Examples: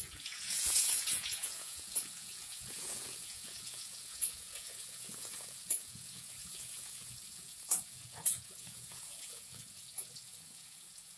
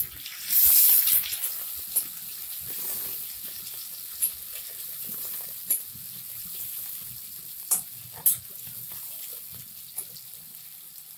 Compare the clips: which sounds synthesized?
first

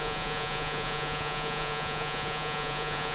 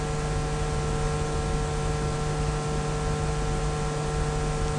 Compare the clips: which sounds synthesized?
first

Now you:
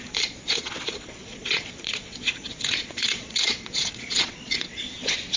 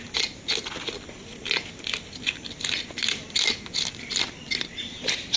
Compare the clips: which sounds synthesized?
first